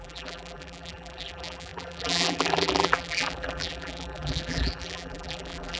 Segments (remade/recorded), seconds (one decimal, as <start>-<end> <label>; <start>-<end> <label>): 0.0-5.8 remade